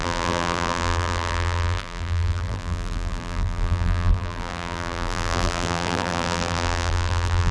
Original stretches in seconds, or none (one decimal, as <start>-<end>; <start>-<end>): none

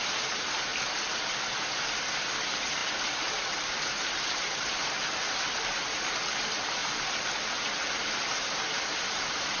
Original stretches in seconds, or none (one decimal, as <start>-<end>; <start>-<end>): 0.7-1.3; 6.8-8.0

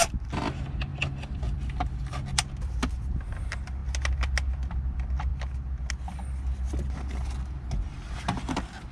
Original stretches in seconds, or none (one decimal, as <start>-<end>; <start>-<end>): 0.0-0.9; 2.9-8.9

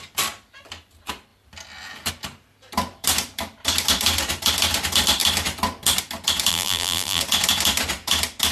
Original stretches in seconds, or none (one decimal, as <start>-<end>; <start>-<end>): 0.0-6.5; 7.2-8.5

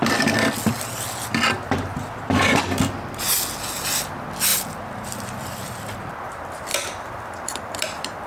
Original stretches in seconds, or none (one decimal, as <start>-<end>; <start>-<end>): 0.0-4.5; 6.0-6.7

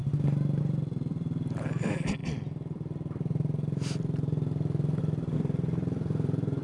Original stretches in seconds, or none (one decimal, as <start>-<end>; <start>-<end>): 0.0-0.6

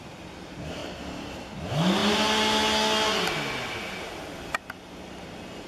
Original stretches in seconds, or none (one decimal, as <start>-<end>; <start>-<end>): 0.0-5.7